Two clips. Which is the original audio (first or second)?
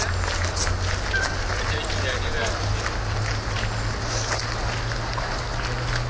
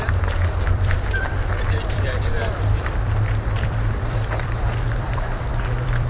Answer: first